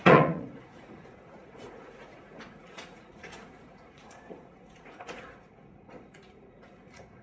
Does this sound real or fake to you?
fake